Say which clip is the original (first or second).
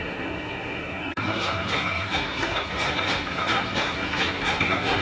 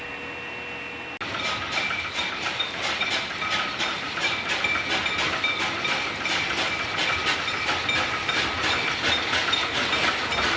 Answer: second